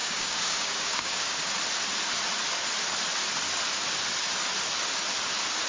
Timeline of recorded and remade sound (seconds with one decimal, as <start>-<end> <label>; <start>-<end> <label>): 0.0-1.5 remade; 1.5-5.7 recorded